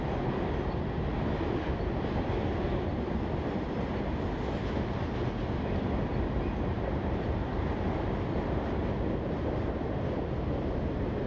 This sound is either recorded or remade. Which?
recorded